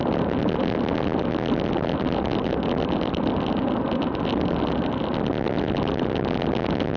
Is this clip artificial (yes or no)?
no